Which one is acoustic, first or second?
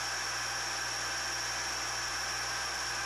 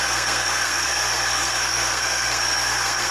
first